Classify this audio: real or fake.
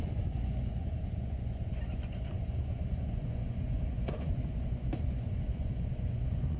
fake